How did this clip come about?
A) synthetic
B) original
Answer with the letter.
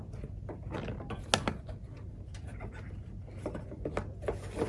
B